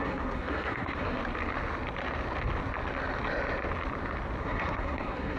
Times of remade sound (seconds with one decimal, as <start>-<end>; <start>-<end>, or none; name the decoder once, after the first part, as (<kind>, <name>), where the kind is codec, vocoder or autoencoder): 0.0-1.2 (codec, SNAC); 4.4-5.4